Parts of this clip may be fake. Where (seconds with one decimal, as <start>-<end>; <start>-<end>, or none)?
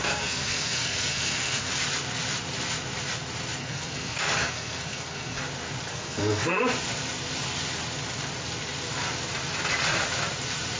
0.0-1.7; 3.6-5.4; 5.9-6.6